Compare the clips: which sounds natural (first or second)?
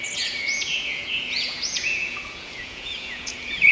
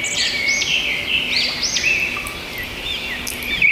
second